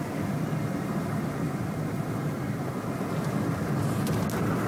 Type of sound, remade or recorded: recorded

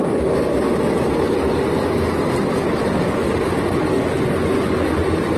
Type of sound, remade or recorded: recorded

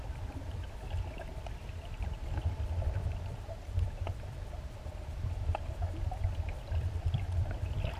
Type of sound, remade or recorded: remade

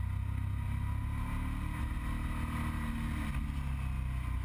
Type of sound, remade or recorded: recorded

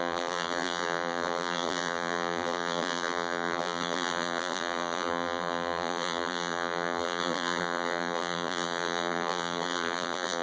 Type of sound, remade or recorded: remade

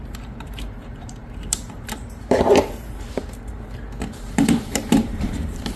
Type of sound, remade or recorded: remade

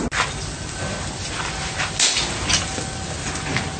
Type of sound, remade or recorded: recorded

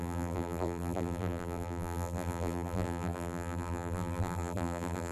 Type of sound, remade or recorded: remade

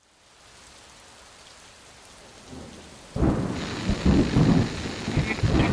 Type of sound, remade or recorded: recorded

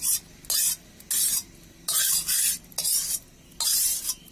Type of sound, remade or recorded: recorded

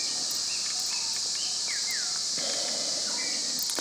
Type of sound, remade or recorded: recorded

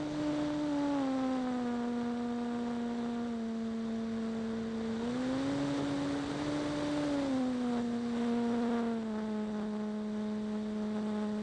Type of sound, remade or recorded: recorded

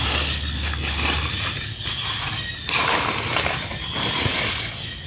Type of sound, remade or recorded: recorded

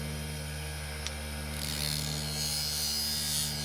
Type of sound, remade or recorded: recorded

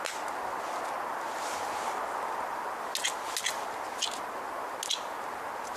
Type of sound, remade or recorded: recorded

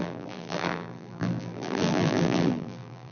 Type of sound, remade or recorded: remade